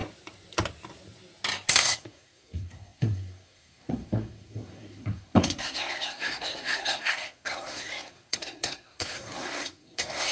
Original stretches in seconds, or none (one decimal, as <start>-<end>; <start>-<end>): 0.0-1.7